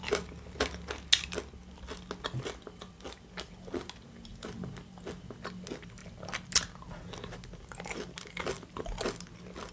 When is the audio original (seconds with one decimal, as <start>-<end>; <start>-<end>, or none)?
0.0-9.7